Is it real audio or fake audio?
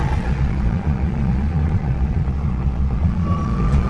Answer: fake